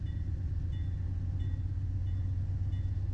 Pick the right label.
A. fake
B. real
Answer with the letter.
B